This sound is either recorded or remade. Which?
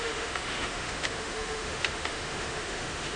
remade